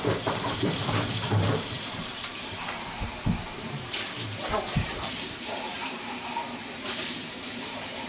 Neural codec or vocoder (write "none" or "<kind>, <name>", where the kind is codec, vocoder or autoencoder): vocoder, BigVGAN v2